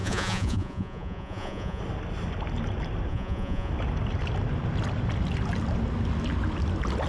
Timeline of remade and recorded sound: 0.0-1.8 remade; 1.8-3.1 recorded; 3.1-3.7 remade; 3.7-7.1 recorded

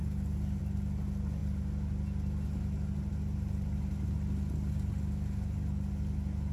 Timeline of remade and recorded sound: 0.0-6.5 recorded

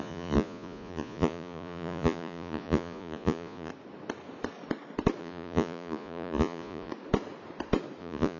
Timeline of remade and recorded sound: 0.0-3.7 remade; 3.7-5.2 recorded; 5.2-6.9 remade; 6.9-8.0 recorded; 8.0-8.4 remade

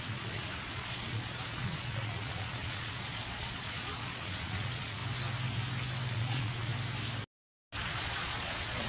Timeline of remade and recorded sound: 0.0-5.0 remade; 5.0-6.1 recorded; 6.1-6.7 remade; 6.7-7.8 recorded; 7.8-8.9 remade

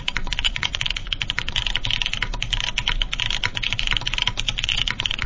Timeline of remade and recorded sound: 0.0-1.6 remade; 1.6-4.6 recorded; 4.6-5.3 remade

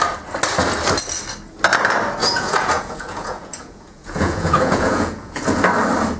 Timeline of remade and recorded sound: 0.0-2.2 recorded; 2.2-5.6 remade; 5.6-6.2 recorded

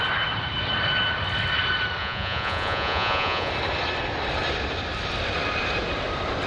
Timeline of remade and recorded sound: 0.0-2.0 recorded; 2.0-3.5 remade; 3.5-6.5 recorded